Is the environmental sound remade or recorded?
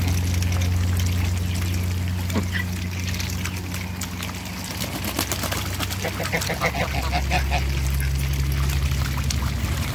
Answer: recorded